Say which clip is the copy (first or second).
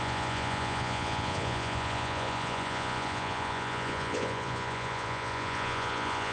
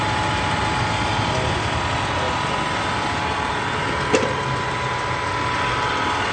first